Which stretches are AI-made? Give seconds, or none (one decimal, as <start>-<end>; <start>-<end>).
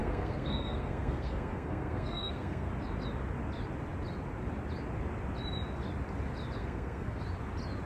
0.0-2.7; 6.6-7.2